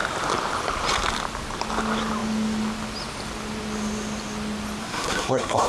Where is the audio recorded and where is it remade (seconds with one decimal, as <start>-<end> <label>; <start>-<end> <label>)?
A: 0.0-4.8 recorded; 4.8-5.7 remade

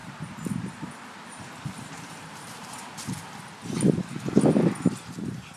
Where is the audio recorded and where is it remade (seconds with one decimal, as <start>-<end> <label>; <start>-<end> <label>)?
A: 0.0-2.8 remade; 2.8-5.6 recorded

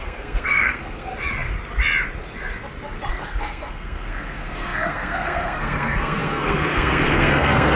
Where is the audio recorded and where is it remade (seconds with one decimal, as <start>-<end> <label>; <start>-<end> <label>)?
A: 0.0-1.1 remade; 1.1-3.1 recorded; 3.1-7.8 remade

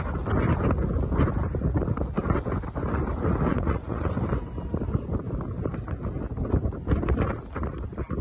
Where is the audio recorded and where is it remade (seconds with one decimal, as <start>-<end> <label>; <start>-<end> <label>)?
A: 0.0-3.5 recorded; 3.5-4.1 remade; 4.1-8.2 recorded